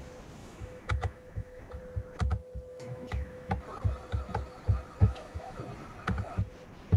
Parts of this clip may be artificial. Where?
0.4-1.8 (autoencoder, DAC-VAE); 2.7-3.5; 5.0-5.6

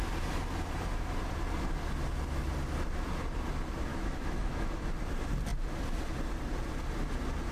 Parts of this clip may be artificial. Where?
3.9-4.8 (autoencoder, DAC-VAE)

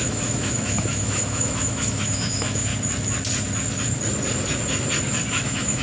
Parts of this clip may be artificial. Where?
0.0-2.7 (autoencoder, DAC-VAE); 5.3-5.8

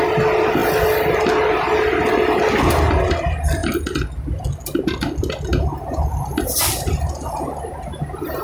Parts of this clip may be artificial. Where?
none

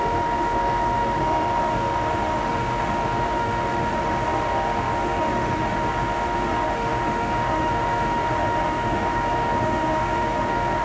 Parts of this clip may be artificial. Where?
0.0-10.8 (autoencoder, DAC-VAE)